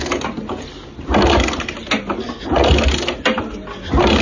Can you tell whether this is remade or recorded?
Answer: recorded